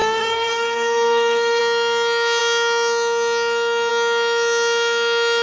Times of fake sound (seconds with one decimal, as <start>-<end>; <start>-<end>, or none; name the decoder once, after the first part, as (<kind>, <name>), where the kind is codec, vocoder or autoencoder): 0.0-1.6 (codec, SNAC)